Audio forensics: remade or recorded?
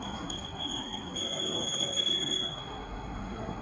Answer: remade